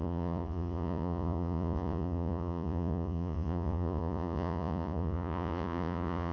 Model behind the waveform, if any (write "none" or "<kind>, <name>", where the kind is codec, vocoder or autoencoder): vocoder, Vocos